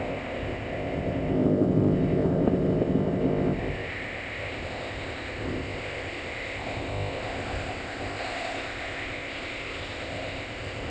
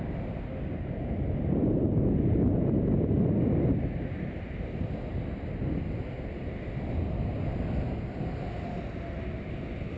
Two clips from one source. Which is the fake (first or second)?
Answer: first